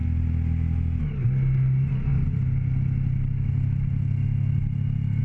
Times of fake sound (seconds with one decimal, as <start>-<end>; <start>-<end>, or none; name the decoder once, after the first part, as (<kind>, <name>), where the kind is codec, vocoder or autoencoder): none